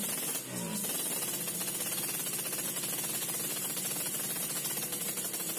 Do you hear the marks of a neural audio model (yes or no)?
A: no